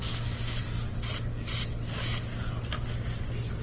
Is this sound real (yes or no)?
yes